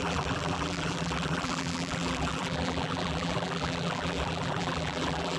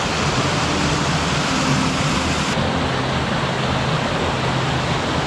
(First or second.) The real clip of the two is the second